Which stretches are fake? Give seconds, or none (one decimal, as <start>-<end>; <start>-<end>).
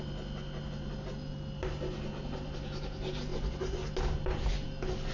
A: none